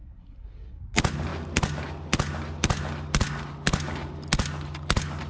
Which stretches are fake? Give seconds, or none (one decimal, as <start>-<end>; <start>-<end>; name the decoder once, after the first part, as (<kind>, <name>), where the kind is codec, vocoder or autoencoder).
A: 0.0-0.8 (codec, SNAC)